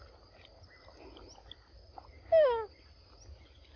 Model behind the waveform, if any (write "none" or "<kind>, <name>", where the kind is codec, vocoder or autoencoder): none